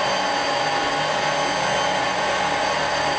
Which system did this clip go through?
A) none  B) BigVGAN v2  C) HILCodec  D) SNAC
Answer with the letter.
A